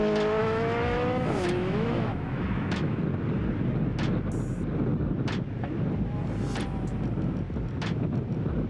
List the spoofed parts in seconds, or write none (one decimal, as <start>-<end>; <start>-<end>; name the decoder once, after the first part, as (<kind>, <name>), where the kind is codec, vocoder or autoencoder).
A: 0.4-3.0 (autoencoder, DAC-VAE)